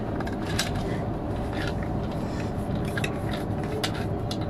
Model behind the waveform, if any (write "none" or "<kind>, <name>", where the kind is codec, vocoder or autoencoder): none